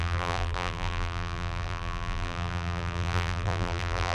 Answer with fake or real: fake